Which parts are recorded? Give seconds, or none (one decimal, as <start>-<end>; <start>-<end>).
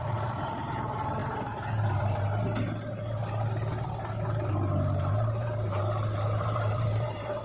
0.0-5.4